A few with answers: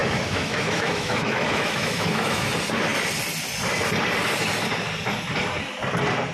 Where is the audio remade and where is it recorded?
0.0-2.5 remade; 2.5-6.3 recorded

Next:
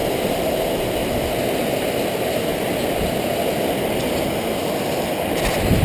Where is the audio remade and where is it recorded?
0.0-5.8 recorded

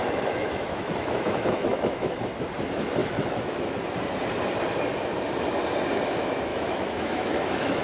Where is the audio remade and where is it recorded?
0.0-2.2 remade; 2.2-3.0 recorded; 3.0-3.8 remade; 3.8-6.5 recorded; 6.5-7.8 remade